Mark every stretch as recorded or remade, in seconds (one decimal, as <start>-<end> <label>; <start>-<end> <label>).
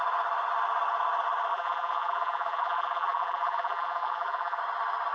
0.0-1.5 recorded; 1.5-4.6 remade; 4.6-5.1 recorded